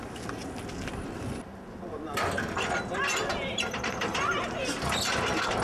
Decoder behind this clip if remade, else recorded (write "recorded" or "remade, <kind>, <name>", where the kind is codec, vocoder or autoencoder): recorded